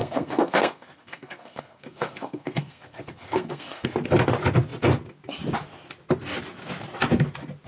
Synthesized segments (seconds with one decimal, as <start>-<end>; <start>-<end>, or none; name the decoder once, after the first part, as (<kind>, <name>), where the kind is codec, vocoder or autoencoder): 0.0-3.9 (codec, SNAC)